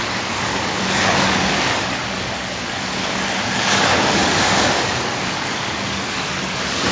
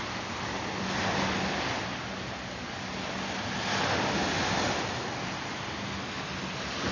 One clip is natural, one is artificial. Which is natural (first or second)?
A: second